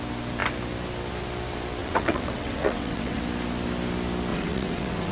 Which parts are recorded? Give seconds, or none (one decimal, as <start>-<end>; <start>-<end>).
0.0-1.8; 3.2-4.3